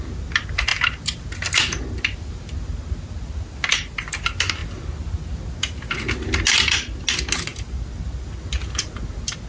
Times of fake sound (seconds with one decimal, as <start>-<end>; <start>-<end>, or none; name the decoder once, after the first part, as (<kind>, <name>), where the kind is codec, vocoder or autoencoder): none